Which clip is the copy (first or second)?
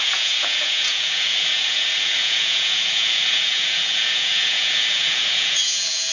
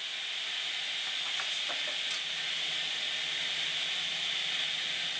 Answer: first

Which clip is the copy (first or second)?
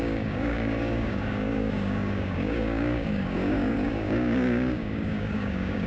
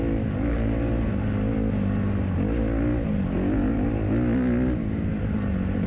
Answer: first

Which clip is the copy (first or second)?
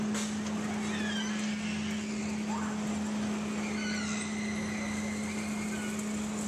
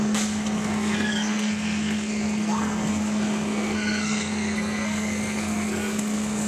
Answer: second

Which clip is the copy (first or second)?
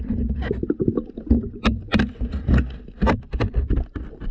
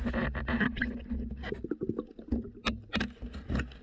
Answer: first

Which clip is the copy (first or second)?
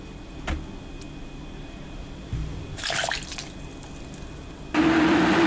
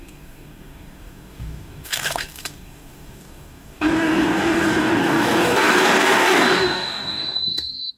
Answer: second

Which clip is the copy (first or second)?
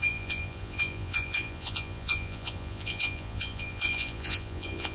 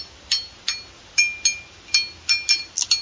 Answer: first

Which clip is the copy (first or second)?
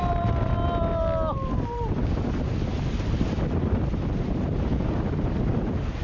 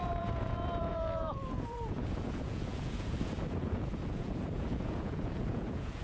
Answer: second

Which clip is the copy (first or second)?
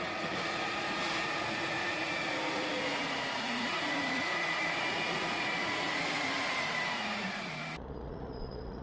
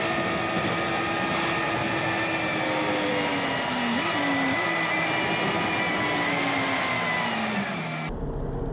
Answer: first